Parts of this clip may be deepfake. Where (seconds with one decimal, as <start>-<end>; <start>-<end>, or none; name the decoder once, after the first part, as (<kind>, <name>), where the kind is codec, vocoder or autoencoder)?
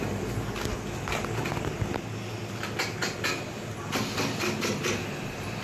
none